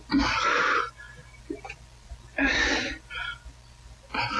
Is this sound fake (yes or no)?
no